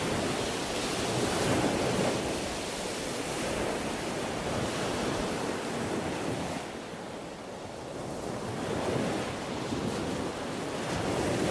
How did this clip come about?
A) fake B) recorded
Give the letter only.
B